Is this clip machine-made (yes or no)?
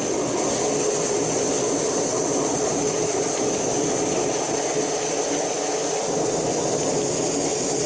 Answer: no